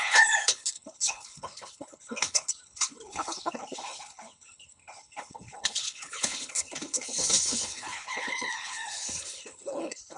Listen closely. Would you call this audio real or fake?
fake